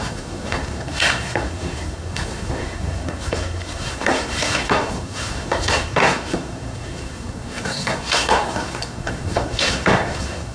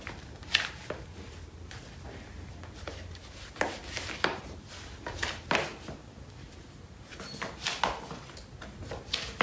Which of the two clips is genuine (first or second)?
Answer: second